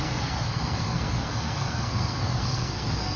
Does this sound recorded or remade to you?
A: remade